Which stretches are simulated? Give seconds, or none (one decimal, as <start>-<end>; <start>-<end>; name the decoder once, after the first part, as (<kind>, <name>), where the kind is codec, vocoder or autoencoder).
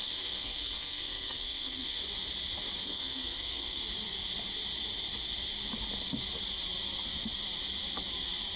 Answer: 0.0-2.0 (codec, SNAC); 2.8-3.8